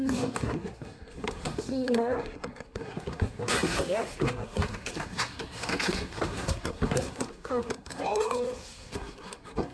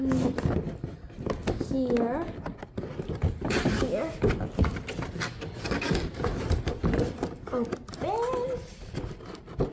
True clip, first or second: second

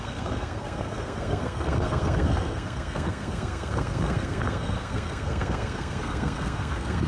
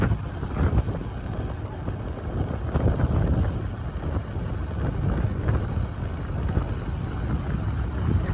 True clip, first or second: second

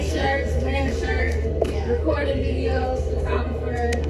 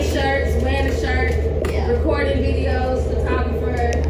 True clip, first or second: second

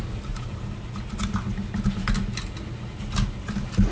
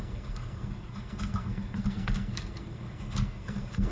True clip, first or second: first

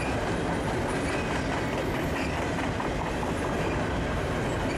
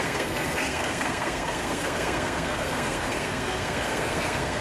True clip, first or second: first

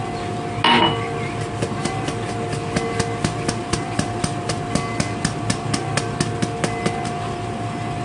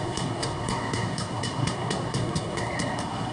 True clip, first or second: first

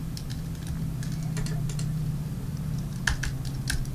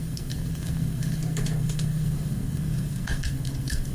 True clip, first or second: first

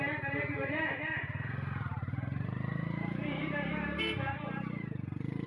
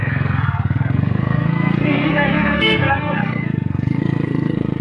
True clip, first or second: first